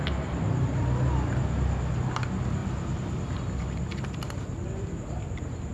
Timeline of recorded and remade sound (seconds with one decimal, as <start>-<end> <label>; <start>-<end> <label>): 0.0-5.7 recorded